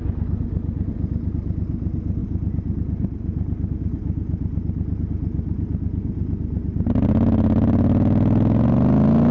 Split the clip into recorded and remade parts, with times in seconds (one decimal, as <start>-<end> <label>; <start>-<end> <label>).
0.0-9.3 recorded